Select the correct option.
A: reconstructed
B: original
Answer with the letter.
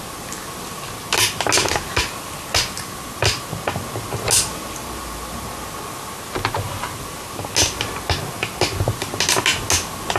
B